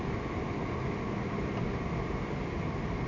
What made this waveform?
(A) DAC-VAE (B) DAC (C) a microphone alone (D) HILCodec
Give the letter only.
C